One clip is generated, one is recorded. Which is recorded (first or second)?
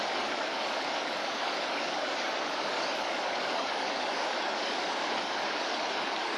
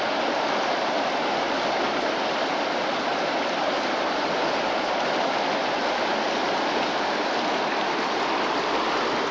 second